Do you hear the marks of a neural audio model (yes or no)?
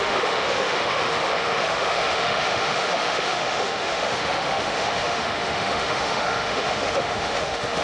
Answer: yes